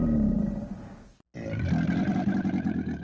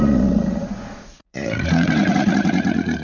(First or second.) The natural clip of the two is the first